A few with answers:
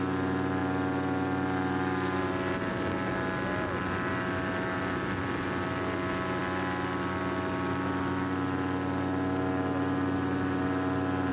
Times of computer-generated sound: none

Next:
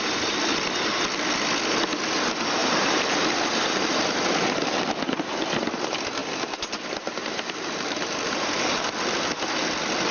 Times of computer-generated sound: 2.6-5.0 (vocoder, BigVGAN v2); 6.2-8.8

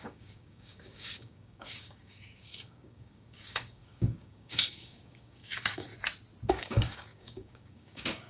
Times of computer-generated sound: 0.0-5.9 (codec, DAC); 6.5-8.3